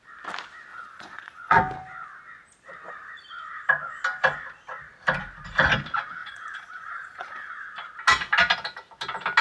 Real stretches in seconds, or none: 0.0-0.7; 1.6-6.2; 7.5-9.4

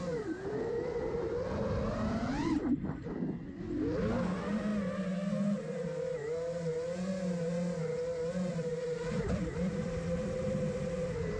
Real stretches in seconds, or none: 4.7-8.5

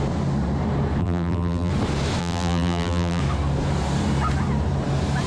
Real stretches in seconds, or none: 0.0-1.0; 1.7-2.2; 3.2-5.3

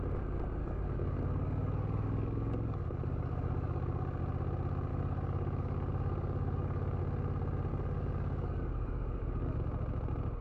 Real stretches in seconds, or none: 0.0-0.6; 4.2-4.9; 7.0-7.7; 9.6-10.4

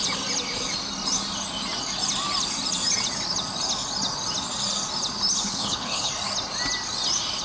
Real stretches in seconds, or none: 0.0-5.4; 6.1-7.4

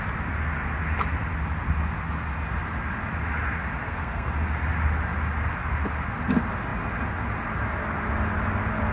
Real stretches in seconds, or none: 0.0-3.8; 4.3-8.9

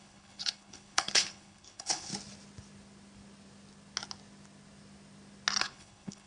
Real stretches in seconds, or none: 2.1-5.6